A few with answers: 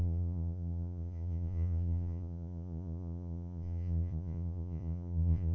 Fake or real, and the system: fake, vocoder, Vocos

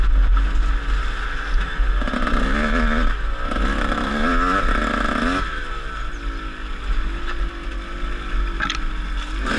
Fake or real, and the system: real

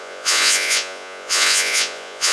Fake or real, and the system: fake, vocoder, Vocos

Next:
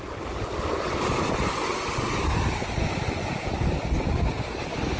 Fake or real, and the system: real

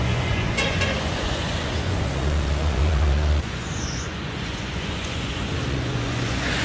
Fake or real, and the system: fake, vocoder, Vocos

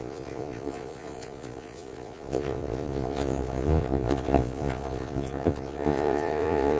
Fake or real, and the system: fake, vocoder, Vocos